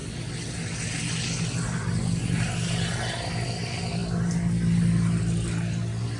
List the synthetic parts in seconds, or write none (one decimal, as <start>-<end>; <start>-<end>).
none